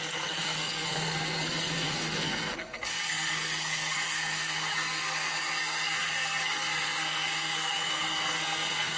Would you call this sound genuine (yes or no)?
no